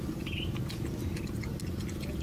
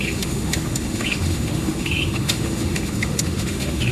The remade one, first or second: second